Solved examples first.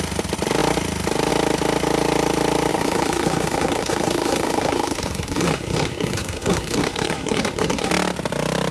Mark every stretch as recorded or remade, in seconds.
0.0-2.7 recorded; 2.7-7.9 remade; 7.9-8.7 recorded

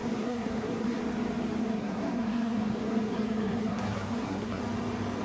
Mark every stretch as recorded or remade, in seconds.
0.0-1.0 remade; 1.0-1.6 recorded; 1.6-4.6 remade; 4.6-5.2 recorded

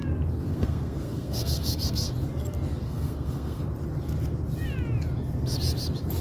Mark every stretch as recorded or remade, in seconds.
0.0-0.5 recorded; 0.5-2.1 remade; 2.1-2.8 recorded; 2.8-3.6 remade; 3.6-6.2 recorded

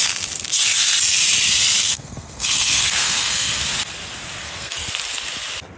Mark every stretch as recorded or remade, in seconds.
0.0-1.8 recorded; 1.8-3.6 remade; 3.6-4.4 recorded; 4.4-4.9 remade; 4.9-5.8 recorded

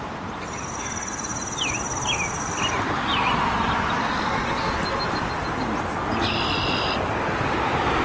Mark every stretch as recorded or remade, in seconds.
0.0-8.0 recorded

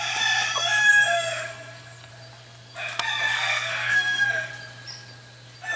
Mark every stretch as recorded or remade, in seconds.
0.0-0.8 recorded; 0.8-2.1 remade; 2.1-3.3 recorded; 3.3-4.5 remade; 4.5-5.8 recorded

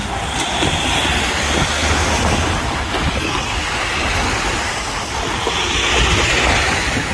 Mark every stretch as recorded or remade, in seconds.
0.0-7.1 recorded

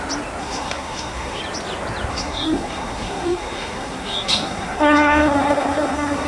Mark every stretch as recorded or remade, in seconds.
0.0-0.4 recorded; 0.4-1.4 remade; 1.4-2.1 recorded; 2.1-6.3 remade